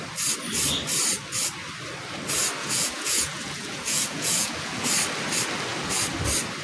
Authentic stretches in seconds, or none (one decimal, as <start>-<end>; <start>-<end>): 0.0-2.6; 4.9-6.6